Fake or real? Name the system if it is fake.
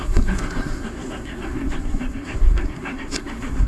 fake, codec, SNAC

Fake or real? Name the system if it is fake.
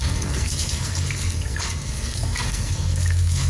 fake, codec, SNAC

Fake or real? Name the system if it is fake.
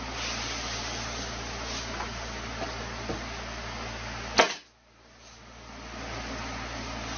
real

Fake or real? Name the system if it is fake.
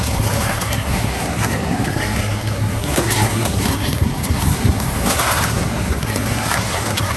fake, codec, SNAC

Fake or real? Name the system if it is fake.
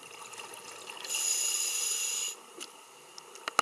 real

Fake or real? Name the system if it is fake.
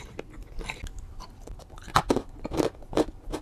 real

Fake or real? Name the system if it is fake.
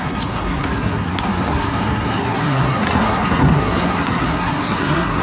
fake, codec, SNAC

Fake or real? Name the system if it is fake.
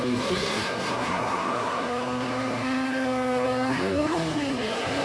fake, codec, SNAC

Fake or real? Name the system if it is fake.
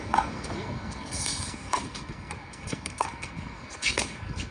fake, codec, SNAC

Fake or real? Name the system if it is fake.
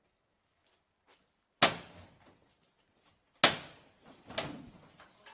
real